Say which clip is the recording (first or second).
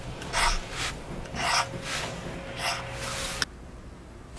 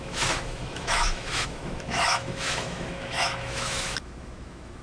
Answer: first